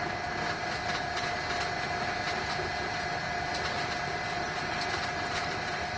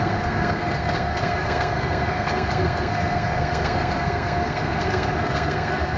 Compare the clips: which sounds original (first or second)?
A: first